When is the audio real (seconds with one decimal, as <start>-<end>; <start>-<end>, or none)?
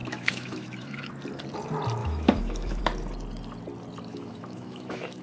1.1-2.0; 2.8-4.1